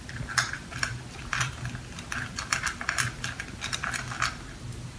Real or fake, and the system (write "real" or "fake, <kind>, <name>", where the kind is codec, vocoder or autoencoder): fake, vocoder, BigVGAN v2